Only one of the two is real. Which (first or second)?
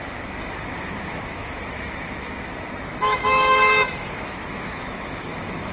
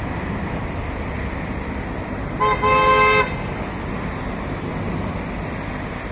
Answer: second